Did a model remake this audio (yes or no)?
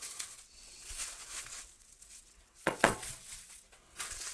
yes